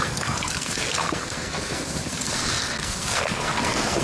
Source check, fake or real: fake